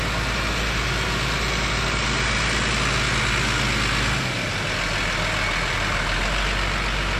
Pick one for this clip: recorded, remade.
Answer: recorded